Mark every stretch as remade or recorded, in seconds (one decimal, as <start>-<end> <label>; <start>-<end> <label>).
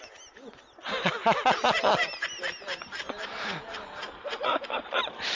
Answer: 0.0-5.4 recorded